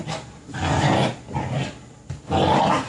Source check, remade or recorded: recorded